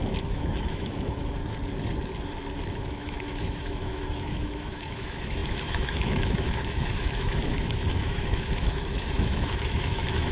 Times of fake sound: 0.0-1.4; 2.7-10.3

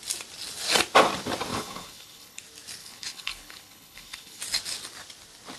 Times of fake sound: 1.5-2.4; 2.8-4.4